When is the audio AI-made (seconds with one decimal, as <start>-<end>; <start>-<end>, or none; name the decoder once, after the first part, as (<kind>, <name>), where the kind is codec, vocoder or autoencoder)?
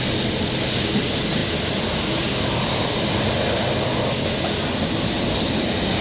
none